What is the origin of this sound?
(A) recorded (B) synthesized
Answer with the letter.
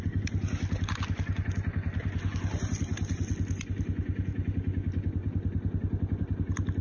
A